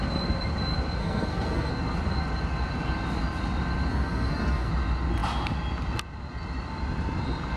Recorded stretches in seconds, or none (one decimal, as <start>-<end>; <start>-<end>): 0.0-1.0; 1.7-3.9; 4.7-7.6